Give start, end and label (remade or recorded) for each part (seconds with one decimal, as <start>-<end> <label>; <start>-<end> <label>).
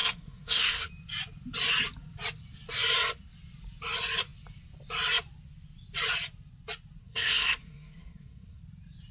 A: 0.0-0.9 remade; 0.9-7.0 recorded; 7.0-8.6 remade; 8.6-9.1 recorded